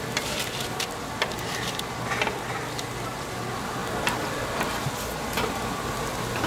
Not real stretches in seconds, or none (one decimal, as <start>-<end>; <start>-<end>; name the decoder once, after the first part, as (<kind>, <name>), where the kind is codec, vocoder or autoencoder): none